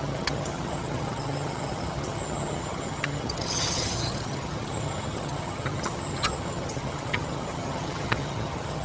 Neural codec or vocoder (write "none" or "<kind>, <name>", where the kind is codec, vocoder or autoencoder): vocoder, HiFi-GAN